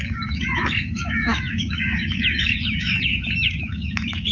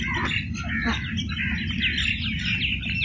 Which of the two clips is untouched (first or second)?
second